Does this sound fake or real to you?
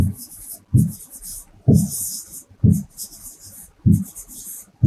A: fake